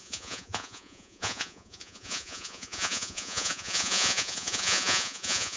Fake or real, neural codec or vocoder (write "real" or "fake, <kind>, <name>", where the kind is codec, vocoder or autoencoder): fake, vocoder, Vocos